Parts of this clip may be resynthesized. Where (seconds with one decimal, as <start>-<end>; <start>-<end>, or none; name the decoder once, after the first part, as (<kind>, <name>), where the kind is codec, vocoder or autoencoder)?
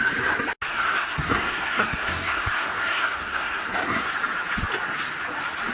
0.7-4.1 (codec, SNAC)